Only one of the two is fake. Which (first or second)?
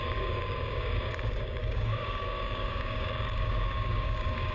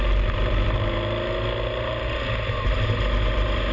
first